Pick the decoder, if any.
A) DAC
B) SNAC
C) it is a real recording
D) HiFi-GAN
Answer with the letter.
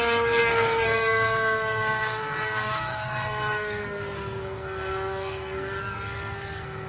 B